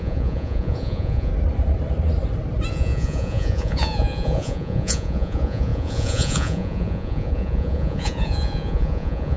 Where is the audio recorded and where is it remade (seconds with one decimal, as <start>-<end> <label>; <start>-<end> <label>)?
0.0-1.3 remade; 1.3-2.7 recorded; 2.7-9.4 remade